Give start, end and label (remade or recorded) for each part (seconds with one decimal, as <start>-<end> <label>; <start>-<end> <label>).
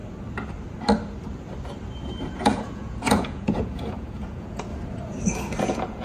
0.0-2.3 recorded; 2.3-4.7 remade; 4.7-5.6 recorded; 5.6-6.0 remade